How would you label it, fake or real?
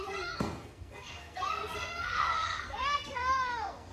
fake